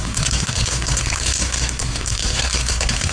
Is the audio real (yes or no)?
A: no